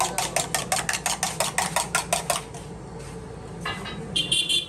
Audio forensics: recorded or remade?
recorded